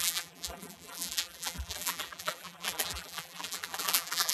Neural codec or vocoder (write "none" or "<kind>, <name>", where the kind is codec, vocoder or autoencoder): vocoder, BigVGAN v2